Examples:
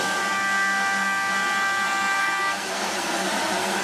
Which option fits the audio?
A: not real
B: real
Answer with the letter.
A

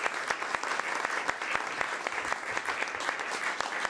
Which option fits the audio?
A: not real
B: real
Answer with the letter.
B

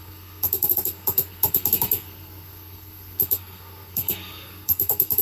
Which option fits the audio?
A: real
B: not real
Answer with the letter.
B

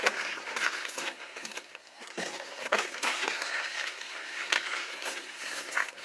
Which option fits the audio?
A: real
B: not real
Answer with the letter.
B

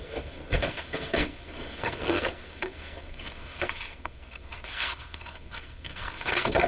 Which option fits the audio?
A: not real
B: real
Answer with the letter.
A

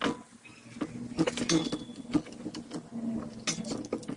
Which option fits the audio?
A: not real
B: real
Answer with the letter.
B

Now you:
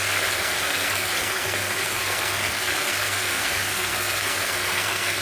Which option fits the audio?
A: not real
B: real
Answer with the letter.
A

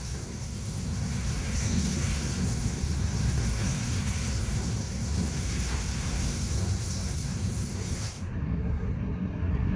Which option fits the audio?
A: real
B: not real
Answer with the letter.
B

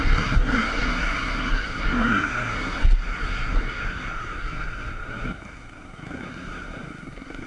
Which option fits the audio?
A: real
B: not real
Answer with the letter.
B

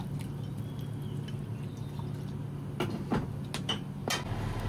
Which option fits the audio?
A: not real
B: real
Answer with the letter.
B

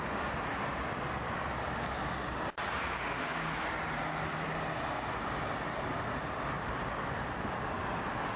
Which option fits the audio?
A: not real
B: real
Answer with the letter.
B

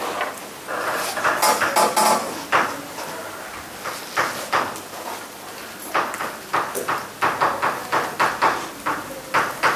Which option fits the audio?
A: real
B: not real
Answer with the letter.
A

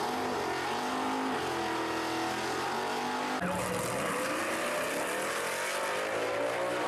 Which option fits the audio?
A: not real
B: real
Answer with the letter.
B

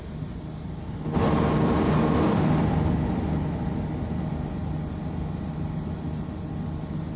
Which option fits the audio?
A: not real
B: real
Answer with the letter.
B